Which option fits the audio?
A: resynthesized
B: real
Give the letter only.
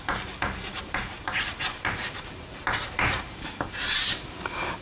A